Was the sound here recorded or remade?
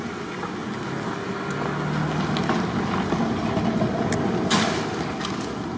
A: recorded